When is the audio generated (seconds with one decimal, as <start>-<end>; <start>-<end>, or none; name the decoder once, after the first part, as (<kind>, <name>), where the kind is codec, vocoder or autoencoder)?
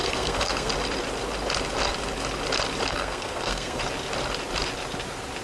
0.0-0.7 (codec, SNAC); 2.9-3.8